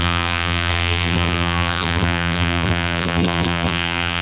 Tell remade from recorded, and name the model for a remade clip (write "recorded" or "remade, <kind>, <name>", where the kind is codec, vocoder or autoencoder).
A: remade, vocoder, BigVGAN v2